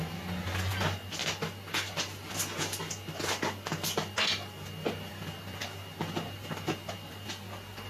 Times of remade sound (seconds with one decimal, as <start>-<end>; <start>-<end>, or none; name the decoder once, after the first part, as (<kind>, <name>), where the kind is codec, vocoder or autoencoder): none